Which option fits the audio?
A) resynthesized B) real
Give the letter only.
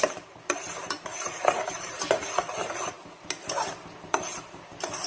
A